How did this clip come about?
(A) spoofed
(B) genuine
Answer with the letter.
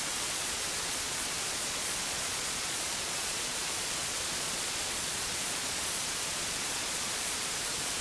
A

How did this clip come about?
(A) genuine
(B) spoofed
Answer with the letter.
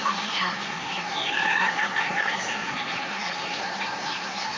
B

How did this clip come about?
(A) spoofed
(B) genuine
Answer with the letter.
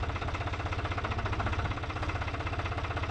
B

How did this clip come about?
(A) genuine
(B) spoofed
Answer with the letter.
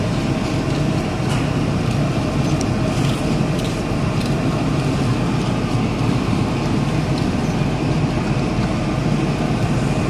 B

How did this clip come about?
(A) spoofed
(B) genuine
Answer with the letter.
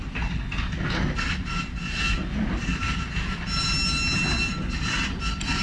B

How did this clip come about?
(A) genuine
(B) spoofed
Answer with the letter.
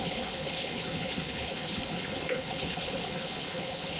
B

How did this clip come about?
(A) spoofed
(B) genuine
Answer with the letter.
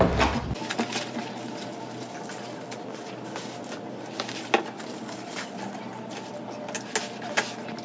B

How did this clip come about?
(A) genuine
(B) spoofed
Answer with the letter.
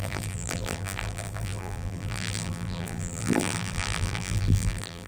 B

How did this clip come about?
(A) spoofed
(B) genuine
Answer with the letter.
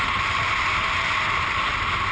B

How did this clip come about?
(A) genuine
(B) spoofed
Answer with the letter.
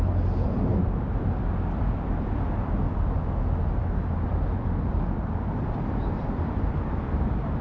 A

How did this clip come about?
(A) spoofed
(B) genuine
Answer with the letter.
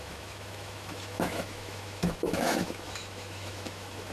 A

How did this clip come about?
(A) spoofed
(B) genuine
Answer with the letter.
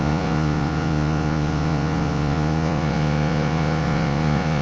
A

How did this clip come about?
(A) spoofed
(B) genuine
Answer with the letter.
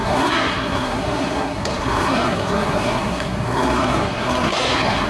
A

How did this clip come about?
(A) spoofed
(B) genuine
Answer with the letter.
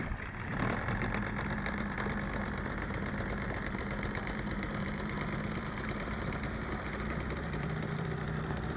A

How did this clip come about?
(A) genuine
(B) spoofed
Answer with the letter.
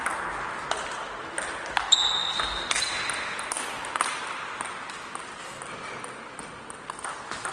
A